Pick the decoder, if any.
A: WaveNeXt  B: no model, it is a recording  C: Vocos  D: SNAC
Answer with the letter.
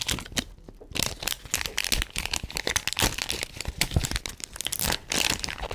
B